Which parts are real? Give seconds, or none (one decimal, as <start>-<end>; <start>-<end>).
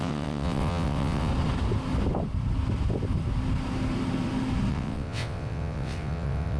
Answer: 1.3-4.7